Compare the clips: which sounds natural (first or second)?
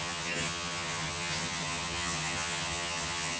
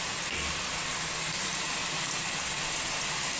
second